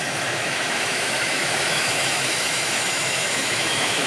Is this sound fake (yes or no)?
yes